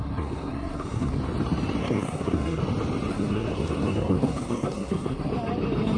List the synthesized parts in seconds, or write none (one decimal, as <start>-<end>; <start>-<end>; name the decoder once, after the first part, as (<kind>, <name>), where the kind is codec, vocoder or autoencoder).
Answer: 0.0-1.2 (codec, SNAC); 1.8-2.6; 3.1-5.3